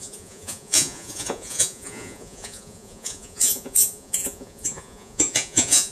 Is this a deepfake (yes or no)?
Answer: yes